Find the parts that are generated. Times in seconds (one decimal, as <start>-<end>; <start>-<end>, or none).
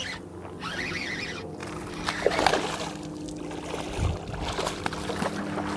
none